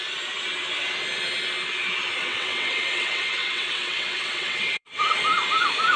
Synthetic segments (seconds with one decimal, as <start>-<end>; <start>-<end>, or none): 2.2-5.2